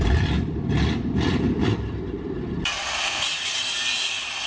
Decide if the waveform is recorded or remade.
remade